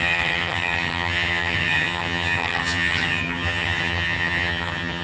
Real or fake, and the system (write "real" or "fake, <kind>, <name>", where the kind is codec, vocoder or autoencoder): fake, vocoder, HiFi-GAN